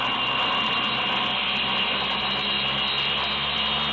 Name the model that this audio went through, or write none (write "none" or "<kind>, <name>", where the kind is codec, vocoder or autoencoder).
none